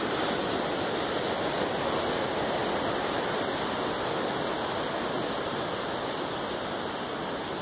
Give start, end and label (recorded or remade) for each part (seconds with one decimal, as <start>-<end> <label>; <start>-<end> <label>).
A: 0.0-7.6 recorded